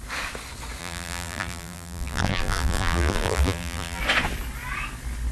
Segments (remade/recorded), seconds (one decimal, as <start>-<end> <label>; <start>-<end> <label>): 0.0-0.8 recorded; 0.8-4.0 remade; 4.0-5.3 recorded